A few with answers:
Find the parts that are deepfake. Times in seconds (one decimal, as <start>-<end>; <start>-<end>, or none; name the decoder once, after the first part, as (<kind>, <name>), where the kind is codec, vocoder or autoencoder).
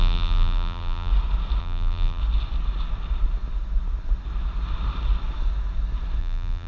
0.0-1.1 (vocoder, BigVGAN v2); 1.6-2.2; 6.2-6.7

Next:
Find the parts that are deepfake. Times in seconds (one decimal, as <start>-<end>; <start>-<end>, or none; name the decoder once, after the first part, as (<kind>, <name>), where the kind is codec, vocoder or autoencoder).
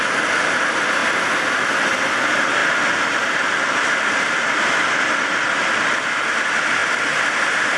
2.6-5.0 (vocoder, BigVGAN v2); 6.8-7.8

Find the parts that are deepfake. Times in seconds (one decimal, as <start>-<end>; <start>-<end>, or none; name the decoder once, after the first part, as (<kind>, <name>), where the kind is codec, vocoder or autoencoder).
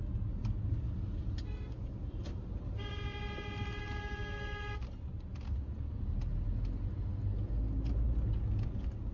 none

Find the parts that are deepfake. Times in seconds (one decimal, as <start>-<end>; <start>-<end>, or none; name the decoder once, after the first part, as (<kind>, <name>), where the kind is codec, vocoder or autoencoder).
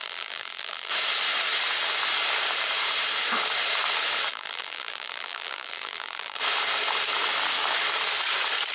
0.0-0.9 (vocoder, BigVGAN v2); 4.3-6.4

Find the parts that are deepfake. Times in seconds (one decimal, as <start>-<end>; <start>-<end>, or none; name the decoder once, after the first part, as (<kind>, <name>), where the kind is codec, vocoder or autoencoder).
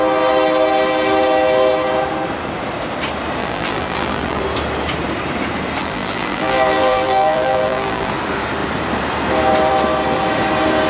3.4-4.4 (vocoder, BigVGAN v2); 5.8-8.1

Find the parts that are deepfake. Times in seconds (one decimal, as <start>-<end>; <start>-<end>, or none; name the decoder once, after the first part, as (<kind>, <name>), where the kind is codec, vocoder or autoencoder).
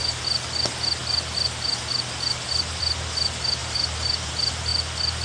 3.6-4.3 (vocoder, BigVGAN v2)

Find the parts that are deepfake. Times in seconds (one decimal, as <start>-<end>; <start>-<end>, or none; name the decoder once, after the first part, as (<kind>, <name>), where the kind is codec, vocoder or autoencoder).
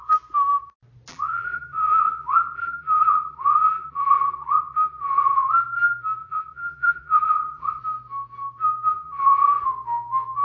1.1-5.5 (vocoder, BigVGAN v2); 6.2-7.8; 8.9-9.6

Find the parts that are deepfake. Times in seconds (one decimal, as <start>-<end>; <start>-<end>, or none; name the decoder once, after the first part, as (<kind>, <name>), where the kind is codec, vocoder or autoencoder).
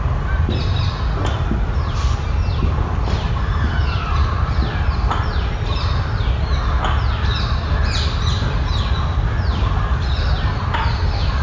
none